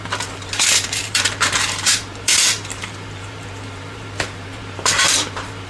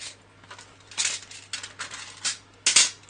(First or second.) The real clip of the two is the second